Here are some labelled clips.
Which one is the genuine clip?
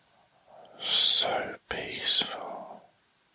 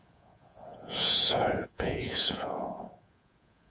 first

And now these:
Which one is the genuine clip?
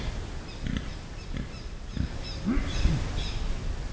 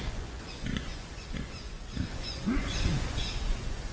first